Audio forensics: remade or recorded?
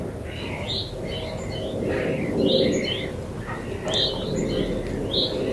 recorded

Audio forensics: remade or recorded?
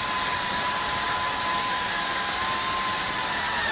recorded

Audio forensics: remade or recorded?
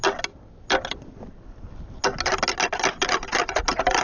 recorded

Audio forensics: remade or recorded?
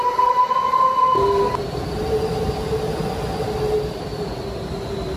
recorded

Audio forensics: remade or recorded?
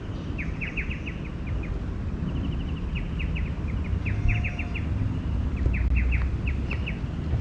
recorded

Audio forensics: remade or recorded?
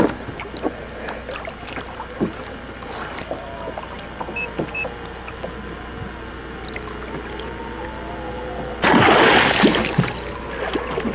recorded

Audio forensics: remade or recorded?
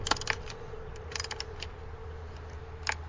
recorded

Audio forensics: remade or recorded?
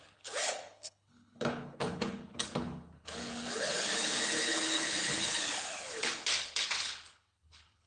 remade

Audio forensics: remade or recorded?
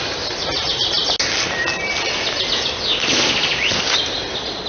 recorded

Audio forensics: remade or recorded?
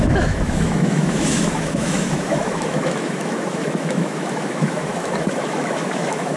remade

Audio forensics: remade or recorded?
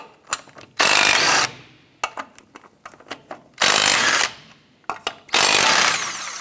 recorded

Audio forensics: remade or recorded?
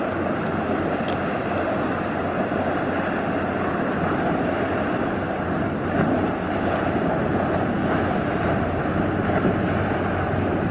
recorded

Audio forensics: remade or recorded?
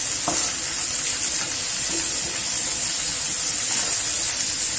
recorded